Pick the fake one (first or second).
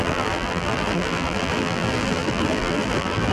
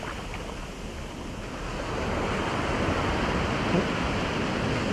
first